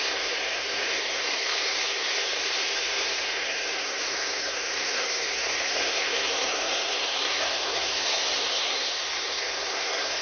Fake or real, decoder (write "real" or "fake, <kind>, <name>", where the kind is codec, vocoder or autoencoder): fake, codec, SNAC